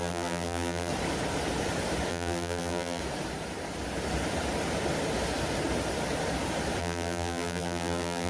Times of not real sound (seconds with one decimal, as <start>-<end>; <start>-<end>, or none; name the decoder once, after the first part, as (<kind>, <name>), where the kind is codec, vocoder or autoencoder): 0.0-0.9 (vocoder, BigVGAN v2); 2.1-3.0; 6.8-8.3